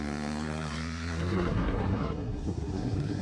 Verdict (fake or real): fake